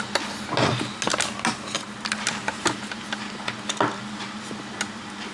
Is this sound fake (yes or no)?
no